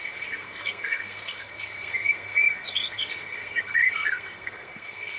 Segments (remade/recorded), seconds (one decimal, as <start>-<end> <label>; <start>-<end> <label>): 0.0-5.2 remade